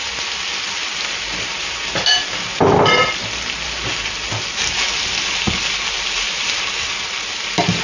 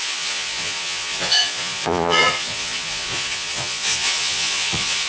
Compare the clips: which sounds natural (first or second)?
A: first